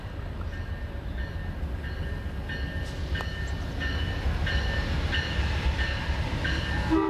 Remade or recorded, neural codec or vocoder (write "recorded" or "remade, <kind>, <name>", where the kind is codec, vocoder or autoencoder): recorded